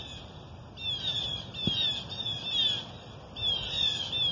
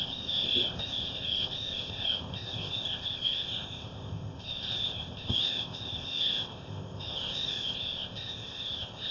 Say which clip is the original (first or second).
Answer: first